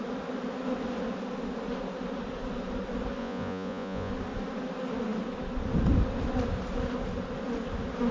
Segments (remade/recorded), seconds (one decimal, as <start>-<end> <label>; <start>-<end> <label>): 0.0-3.2 recorded; 3.2-4.1 remade; 4.1-8.1 recorded